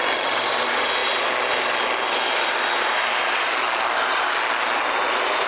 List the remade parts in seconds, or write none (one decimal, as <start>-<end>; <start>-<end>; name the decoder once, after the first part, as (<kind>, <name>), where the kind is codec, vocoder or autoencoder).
none